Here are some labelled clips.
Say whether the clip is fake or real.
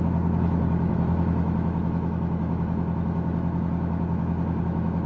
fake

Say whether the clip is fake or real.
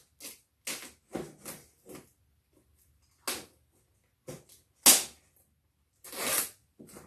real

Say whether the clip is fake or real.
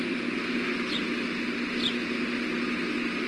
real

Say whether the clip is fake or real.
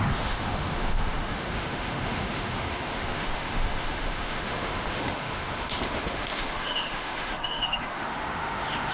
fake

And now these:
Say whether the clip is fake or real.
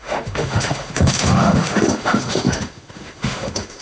fake